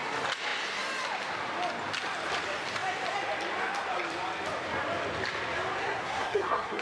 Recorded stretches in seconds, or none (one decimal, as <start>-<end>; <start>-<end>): 0.0-5.8